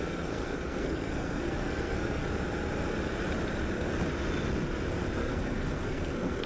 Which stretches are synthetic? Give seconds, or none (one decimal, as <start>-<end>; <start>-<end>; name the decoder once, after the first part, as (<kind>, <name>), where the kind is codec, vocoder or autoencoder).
0.0-2.2 (codec, SNAC); 5.2-6.5

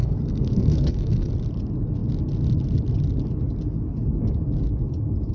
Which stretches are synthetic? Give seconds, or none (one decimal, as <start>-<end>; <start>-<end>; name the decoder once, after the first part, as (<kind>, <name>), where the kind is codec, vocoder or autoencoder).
0.0-1.3 (codec, SNAC)

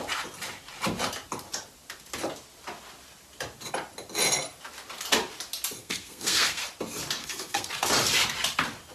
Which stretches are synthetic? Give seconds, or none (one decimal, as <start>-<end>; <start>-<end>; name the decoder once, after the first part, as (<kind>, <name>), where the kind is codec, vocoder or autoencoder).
5.8-6.6 (codec, SNAC); 7.2-7.7